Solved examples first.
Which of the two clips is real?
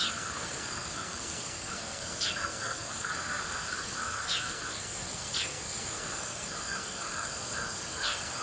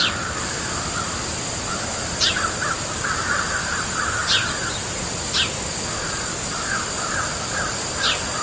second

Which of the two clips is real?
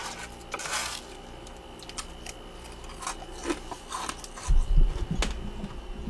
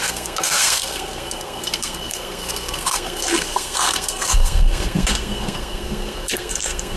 first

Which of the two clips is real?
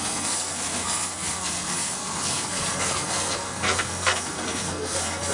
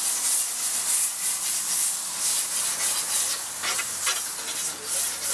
second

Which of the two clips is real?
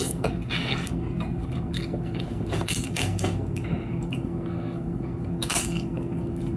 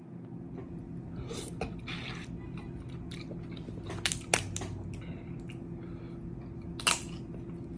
second